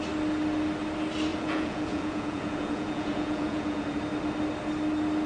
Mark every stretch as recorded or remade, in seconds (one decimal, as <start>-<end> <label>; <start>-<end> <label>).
0.0-1.3 recorded; 1.3-4.0 remade; 4.0-5.3 recorded